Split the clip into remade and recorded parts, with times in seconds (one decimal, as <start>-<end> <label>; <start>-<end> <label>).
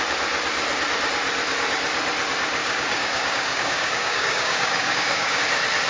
0.0-2.6 recorded; 2.6-5.4 remade; 5.4-5.9 recorded